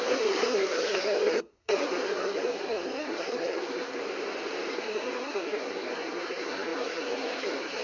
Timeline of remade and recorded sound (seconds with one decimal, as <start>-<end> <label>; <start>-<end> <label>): 0.0-4.0 remade; 4.0-4.7 recorded; 4.7-7.8 remade